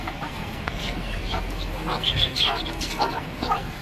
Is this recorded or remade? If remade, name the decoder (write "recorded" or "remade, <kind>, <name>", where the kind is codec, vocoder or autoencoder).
remade, codec, SNAC